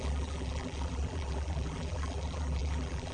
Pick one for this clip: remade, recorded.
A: remade